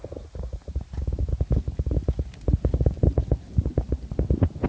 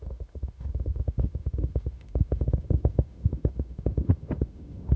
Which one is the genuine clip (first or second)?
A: first